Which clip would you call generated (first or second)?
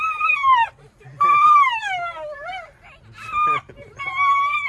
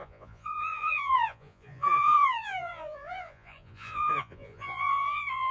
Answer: second